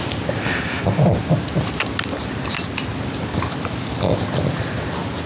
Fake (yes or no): no